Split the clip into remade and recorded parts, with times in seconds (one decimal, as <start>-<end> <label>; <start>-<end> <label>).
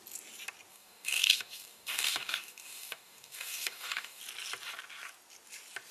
0.0-0.7 recorded; 0.7-4.2 remade; 4.2-5.9 recorded